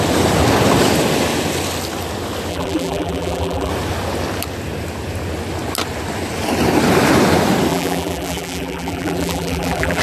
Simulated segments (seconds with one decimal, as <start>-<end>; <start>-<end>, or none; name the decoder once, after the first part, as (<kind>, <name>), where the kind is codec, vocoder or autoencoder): 2.5-3.7 (vocoder, BigVGAN v2); 7.7-10.0